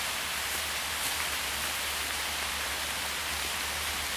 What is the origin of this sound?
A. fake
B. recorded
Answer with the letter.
A